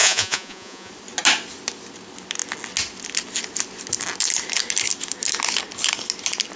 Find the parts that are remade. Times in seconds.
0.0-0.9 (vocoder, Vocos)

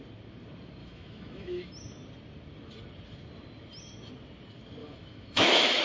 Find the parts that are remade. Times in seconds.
0.8-1.7 (autoencoder, DAC-VAE); 4.8-5.8

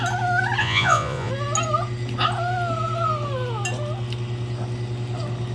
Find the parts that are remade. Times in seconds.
0.6-1.3 (vocoder, Vocos)

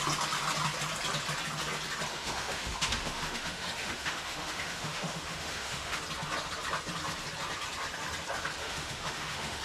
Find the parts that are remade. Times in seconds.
2.1-6.0 (autoencoder, DAC-VAE); 8.6-9.6

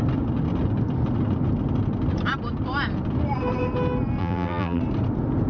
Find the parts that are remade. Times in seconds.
4.2-4.8 (vocoder, BigVGAN v2)

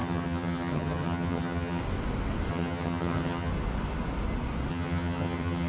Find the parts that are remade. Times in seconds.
0.0-1.8 (vocoder, HiFi-GAN); 2.5-3.5; 4.7-5.7

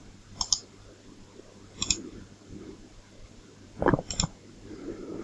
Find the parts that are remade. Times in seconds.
0.0-5.2 (vocoder, BigVGAN v2)